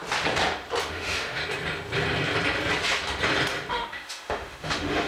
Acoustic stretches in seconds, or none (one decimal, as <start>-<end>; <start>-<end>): 0.0-0.9; 1.4-3.7